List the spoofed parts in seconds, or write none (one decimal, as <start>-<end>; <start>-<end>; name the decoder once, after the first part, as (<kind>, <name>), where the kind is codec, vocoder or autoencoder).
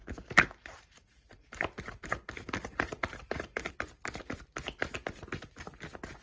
0.0-3.7 (vocoder, BigVGAN v2)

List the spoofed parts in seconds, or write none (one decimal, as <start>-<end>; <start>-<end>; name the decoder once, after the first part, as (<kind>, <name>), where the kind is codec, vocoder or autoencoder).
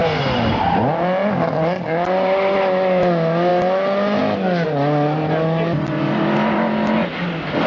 none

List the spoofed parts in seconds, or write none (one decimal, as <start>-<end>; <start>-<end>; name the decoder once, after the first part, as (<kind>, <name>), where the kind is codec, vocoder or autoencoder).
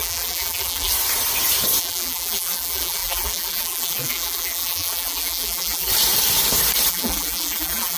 0.0-0.9 (vocoder, BigVGAN v2); 1.8-5.9; 6.9-8.0